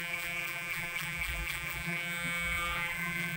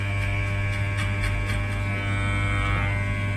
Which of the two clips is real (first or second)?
second